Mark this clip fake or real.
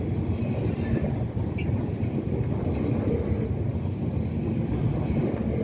real